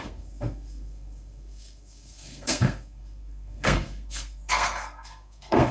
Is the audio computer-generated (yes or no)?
yes